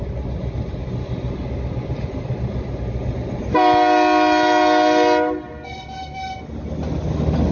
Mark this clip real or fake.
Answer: real